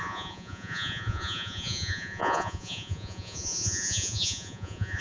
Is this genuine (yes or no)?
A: no